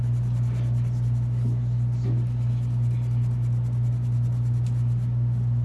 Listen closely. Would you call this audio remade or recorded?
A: recorded